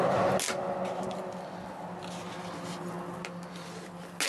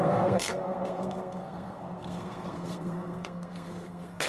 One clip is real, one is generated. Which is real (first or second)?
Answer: first